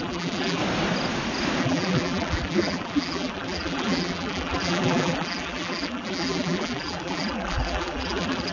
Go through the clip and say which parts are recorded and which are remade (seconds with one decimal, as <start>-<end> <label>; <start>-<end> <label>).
0.0-0.6 remade; 0.6-1.6 recorded; 1.6-8.5 remade